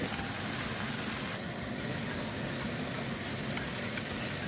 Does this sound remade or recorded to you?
recorded